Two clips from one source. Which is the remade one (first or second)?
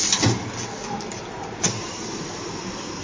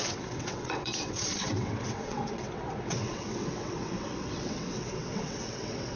second